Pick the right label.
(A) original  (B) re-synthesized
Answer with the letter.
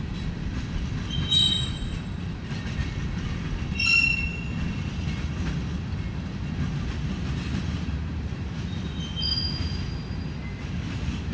A